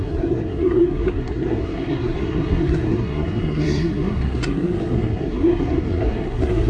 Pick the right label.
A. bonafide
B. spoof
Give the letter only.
B